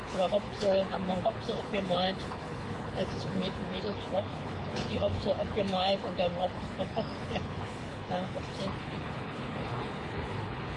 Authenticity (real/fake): fake